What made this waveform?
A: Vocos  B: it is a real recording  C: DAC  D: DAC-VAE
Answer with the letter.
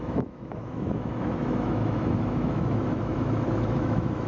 D